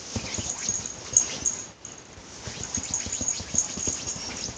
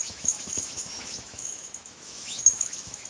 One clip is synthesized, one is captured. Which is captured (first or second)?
first